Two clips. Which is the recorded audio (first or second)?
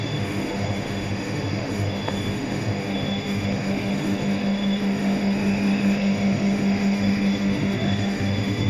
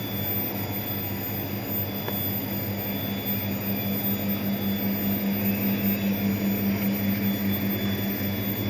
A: second